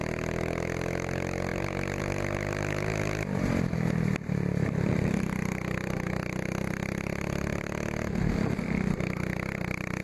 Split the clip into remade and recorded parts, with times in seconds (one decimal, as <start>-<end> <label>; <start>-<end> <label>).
0.0-10.0 recorded

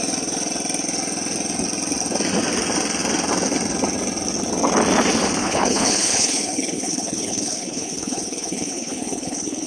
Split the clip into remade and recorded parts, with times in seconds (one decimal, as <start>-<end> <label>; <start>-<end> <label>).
0.0-5.4 recorded; 5.4-9.7 remade

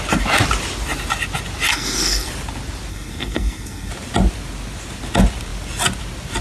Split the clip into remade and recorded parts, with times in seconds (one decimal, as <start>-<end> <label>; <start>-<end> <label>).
0.0-1.7 recorded; 1.7-2.3 remade; 2.3-2.9 recorded; 2.9-3.9 remade; 3.9-6.4 recorded

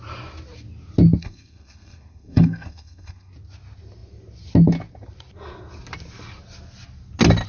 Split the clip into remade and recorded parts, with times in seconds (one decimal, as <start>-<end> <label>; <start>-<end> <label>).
0.0-1.2 recorded; 1.2-3.3 remade; 3.3-7.5 recorded